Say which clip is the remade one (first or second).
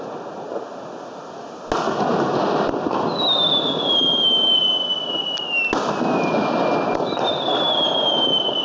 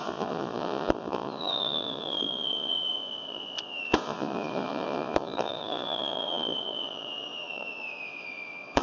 second